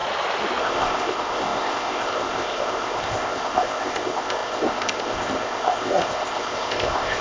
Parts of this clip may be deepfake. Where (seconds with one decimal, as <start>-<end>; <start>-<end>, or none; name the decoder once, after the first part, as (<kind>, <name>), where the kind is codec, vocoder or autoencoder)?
0.6-7.2 (codec, ZipCodec)